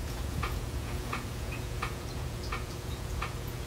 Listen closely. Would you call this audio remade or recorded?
remade